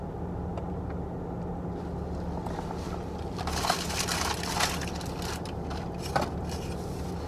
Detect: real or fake real